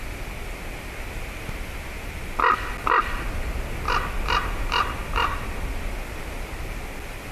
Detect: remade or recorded recorded